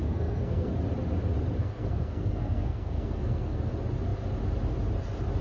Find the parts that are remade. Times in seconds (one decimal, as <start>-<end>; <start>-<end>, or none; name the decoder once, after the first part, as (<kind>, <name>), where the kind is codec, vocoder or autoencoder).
0.0-0.7 (codec, SNAC); 1.6-3.6